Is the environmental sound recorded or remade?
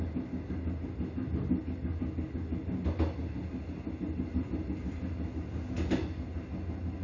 recorded